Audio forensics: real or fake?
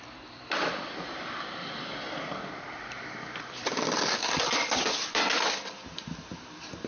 fake